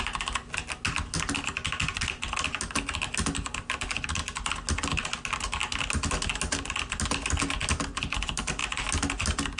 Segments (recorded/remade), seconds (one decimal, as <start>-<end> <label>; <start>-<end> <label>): 0.0-9.6 recorded